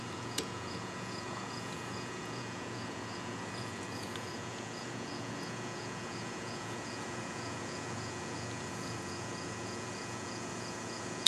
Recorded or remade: remade